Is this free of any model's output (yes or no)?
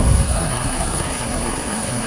no